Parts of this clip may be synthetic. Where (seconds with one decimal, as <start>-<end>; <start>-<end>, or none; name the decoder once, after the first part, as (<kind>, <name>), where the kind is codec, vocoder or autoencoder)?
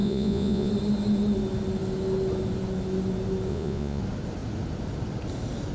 0.0-0.7 (vocoder, Vocos); 3.5-4.0